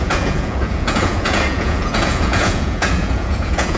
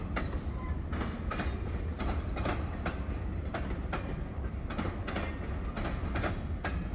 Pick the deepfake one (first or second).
first